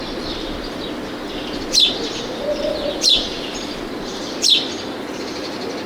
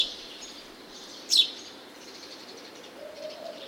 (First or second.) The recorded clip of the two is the first